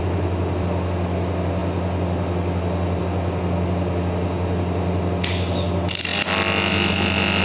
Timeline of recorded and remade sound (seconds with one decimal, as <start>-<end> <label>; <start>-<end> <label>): 0.0-7.4 recorded

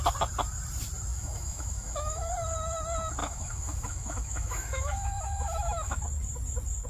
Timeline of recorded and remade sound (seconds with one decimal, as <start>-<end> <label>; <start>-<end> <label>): 0.0-1.1 recorded; 1.1-2.3 remade; 2.3-3.2 recorded; 3.2-6.0 remade; 6.0-6.9 recorded